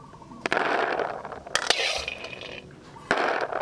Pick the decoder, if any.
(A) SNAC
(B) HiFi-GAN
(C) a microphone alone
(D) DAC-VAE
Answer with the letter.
C